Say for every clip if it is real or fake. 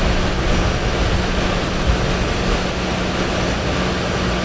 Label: real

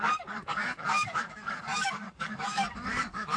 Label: fake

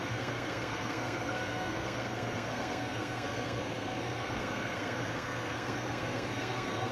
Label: fake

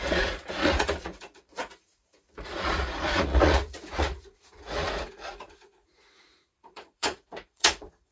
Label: fake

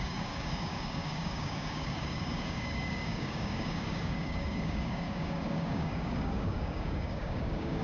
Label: fake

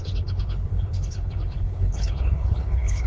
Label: fake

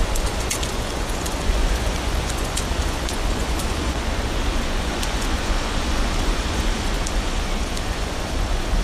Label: fake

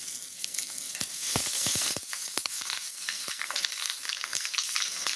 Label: fake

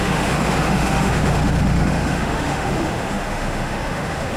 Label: fake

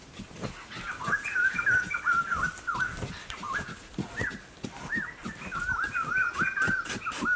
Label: real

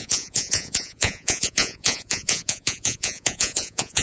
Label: fake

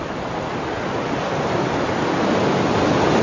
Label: real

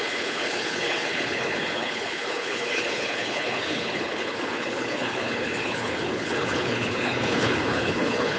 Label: fake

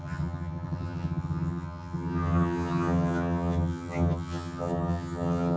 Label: fake